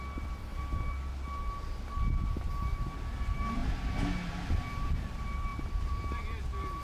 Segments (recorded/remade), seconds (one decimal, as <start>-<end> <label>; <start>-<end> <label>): 0.0-0.5 remade; 0.5-2.4 recorded; 2.4-3.6 remade; 3.6-4.3 recorded; 4.3-6.8 remade